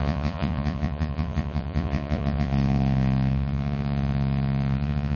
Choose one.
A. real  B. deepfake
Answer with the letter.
B